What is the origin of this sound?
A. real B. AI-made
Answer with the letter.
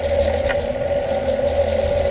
A